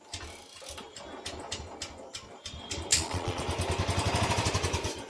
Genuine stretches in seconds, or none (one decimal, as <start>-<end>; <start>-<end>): 0.0-2.9; 3.4-5.1